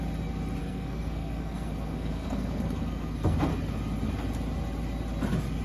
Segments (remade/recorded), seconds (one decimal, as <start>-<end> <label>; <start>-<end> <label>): 0.0-0.6 recorded; 0.6-3.5 remade; 3.5-5.6 recorded

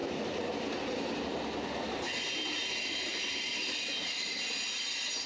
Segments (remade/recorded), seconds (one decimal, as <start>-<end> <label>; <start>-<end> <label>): 0.0-5.3 recorded